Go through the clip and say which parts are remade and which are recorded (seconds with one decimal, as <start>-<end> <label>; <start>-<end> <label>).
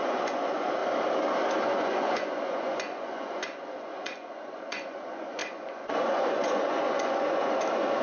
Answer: 0.0-0.8 remade; 0.8-1.6 recorded; 1.6-8.0 remade